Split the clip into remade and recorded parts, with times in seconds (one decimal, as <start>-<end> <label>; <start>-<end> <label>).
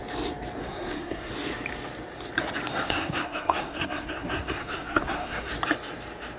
0.0-0.6 recorded; 0.6-1.3 remade; 1.3-2.7 recorded; 2.7-5.5 remade; 5.5-6.4 recorded